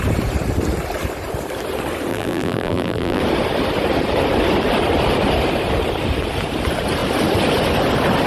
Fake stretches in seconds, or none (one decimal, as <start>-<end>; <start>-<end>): 2.1-3.2